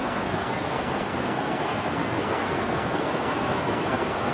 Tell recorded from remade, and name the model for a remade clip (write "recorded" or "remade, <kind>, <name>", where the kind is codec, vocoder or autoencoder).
remade, codec, SNAC